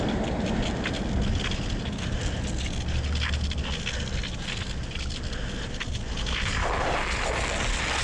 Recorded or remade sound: recorded